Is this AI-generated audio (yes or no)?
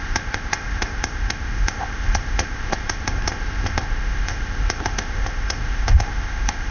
yes